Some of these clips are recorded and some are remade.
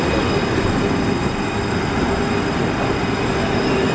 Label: recorded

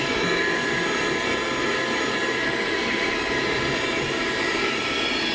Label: recorded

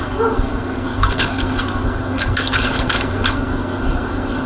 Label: remade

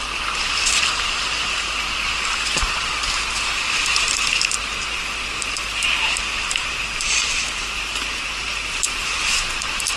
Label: remade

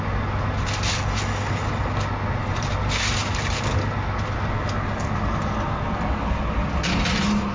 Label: recorded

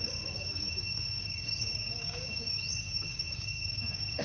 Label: remade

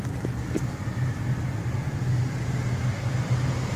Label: recorded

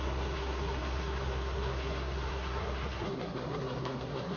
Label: remade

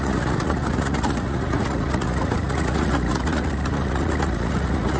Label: remade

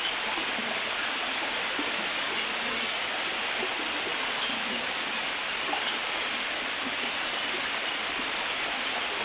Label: recorded